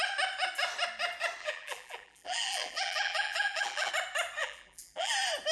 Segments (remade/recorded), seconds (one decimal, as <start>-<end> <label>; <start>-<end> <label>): 0.0-1.4 recorded; 1.4-3.9 remade; 3.9-4.4 recorded; 4.4-5.1 remade; 5.1-5.5 recorded